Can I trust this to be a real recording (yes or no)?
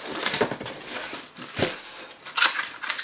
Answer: yes